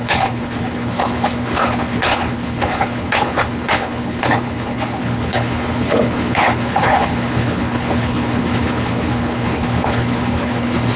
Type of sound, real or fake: fake